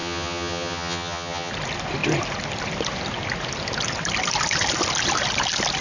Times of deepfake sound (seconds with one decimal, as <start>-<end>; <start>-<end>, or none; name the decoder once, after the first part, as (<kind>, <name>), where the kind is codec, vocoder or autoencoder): 0.0-1.5 (vocoder, HiFi-GAN)